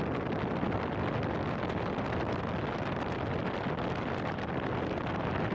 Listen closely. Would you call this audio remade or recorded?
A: recorded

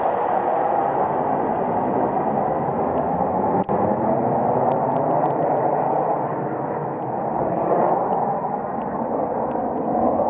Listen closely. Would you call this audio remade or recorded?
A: recorded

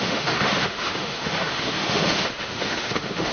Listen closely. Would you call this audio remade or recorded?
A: remade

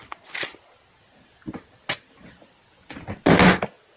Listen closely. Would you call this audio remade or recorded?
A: recorded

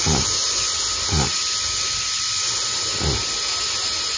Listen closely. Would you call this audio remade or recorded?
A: recorded